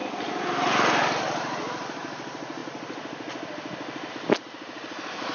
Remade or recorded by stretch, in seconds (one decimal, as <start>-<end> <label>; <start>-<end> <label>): 0.0-5.3 recorded

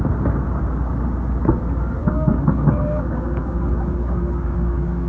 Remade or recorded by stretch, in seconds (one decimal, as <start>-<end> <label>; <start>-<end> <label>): 0.0-2.0 recorded; 2.0-5.1 remade

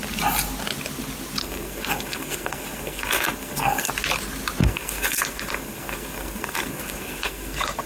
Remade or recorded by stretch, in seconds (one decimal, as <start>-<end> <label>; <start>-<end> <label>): 0.0-1.4 recorded; 1.4-3.9 remade; 3.9-4.6 recorded; 4.6-7.9 remade